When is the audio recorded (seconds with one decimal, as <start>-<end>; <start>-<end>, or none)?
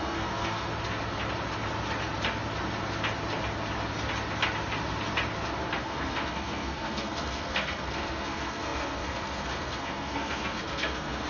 0.7-5.8